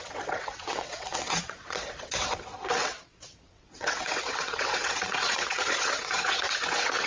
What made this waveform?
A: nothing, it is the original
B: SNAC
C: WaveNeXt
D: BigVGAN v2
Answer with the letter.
C